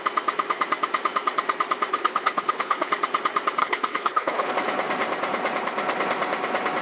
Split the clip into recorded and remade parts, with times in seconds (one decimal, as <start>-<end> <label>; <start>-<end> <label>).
0.0-1.9 recorded; 1.9-2.9 remade; 2.9-3.6 recorded; 3.6-4.5 remade; 4.5-6.8 recorded